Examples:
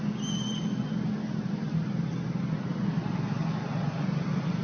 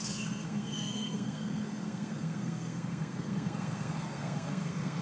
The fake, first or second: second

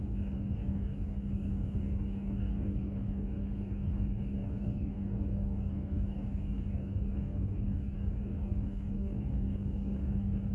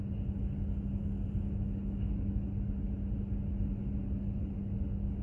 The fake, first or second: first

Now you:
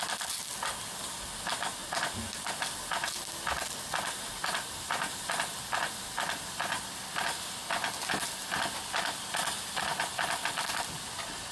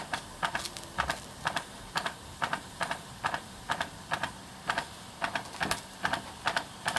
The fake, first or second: second